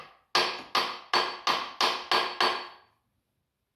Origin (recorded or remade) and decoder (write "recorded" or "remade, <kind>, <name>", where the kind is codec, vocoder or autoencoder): recorded